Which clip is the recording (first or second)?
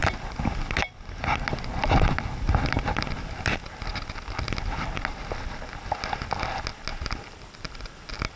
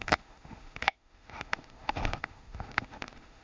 first